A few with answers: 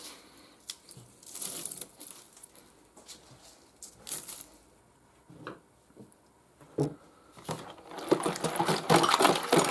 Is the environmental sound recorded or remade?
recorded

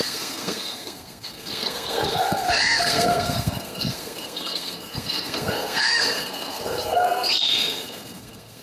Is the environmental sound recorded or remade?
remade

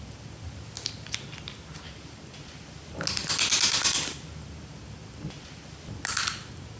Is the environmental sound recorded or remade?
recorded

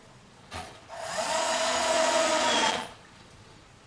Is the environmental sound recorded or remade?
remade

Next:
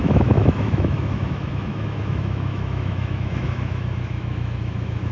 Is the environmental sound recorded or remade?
remade